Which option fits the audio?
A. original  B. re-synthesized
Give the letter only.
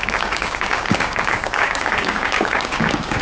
B